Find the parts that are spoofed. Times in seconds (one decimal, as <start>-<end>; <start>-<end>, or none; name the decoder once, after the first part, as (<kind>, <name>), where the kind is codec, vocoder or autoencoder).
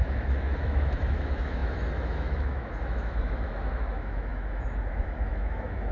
0.0-5.9 (autoencoder, DAC-VAE)